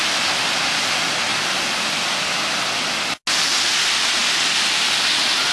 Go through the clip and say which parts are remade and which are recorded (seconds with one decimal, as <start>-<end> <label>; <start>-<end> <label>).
0.0-5.5 recorded